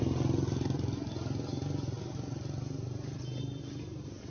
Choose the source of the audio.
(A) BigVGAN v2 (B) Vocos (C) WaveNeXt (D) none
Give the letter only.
D